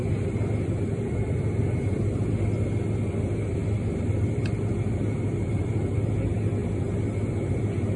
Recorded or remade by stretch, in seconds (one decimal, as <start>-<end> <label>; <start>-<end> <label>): 0.0-2.3 remade; 2.3-3.6 recorded; 3.6-5.8 remade; 5.8-8.0 recorded